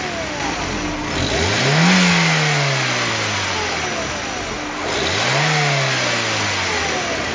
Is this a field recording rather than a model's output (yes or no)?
yes